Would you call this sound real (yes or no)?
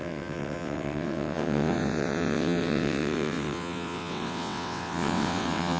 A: no